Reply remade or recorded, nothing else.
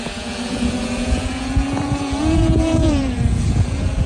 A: remade